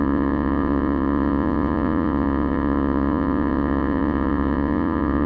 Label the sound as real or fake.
fake